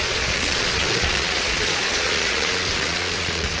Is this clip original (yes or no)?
no